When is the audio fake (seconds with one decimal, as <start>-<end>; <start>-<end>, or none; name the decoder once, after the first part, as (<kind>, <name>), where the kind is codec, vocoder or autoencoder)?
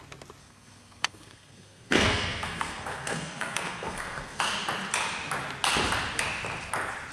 0.4-4.4 (codec, SNAC)